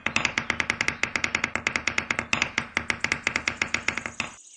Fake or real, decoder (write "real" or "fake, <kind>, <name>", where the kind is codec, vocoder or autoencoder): real